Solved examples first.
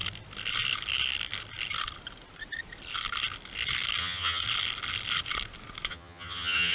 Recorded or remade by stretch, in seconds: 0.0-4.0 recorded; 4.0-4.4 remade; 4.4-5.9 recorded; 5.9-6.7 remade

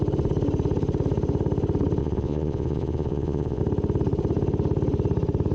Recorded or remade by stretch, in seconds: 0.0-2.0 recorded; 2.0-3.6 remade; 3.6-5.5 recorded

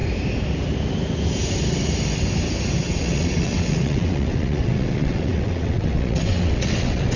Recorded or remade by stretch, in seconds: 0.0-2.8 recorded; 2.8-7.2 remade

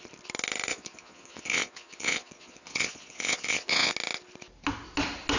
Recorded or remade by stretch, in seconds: 0.0-0.7 recorded; 0.7-3.9 remade; 3.9-5.4 recorded

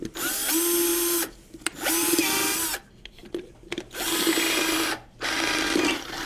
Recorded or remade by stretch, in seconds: 0.0-6.3 recorded